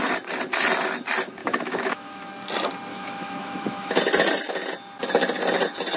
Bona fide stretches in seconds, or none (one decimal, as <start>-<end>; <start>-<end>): 0.0-1.4; 2.3-2.9; 4.0-6.0